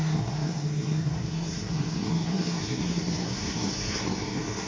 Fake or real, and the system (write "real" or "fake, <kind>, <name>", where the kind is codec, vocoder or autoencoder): fake, codec, SNAC